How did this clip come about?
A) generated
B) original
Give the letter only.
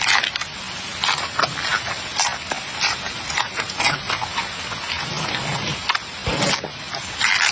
B